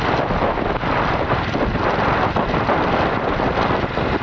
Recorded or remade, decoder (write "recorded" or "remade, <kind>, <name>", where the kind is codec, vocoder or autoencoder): recorded